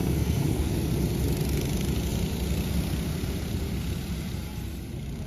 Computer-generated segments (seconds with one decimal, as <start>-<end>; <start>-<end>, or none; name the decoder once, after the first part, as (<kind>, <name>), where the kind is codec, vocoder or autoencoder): 0.0-0.7 (codec, SNAC)